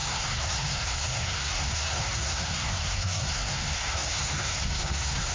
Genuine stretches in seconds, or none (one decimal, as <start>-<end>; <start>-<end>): none